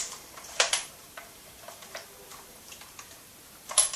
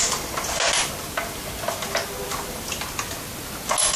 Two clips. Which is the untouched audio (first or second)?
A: second